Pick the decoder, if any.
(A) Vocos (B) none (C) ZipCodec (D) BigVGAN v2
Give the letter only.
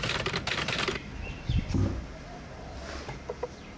B